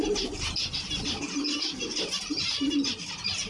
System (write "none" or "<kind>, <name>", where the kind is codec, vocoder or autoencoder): none